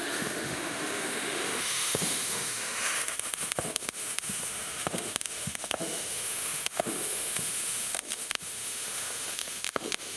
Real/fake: fake